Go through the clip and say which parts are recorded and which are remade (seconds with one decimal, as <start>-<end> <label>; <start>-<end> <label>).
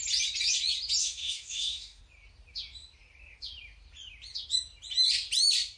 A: 0.0-1.0 recorded; 1.0-2.0 remade; 2.0-5.8 recorded